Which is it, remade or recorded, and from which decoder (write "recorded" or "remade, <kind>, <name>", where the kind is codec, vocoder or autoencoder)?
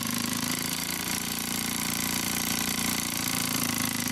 remade, vocoder, BigVGAN v2